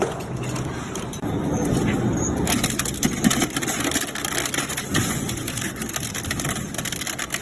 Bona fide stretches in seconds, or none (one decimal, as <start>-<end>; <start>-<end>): 0.7-4.6; 5.8-7.4